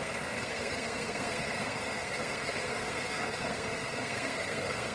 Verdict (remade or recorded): remade